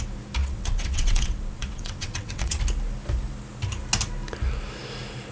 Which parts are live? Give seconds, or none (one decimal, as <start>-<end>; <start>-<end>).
0.0-0.4; 2.6-5.3